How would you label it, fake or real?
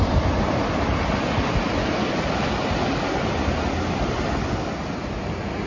real